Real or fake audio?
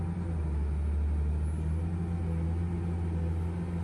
real